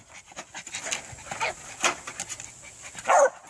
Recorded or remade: recorded